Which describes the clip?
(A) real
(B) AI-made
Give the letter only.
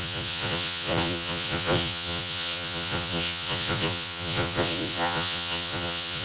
B